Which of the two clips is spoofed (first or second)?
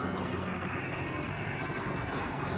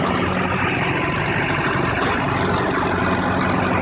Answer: first